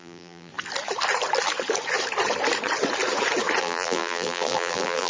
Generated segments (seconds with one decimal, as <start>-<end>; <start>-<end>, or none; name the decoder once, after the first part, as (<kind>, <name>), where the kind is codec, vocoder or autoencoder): 0.0-0.5 (vocoder, BigVGAN v2); 3.6-5.1